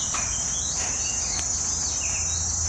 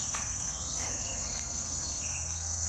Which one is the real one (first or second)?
first